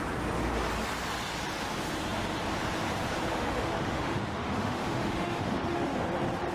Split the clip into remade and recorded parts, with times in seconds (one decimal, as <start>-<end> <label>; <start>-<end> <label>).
0.0-3.3 recorded; 3.3-6.0 remade; 6.0-6.5 recorded